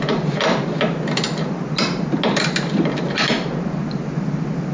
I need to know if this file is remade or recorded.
recorded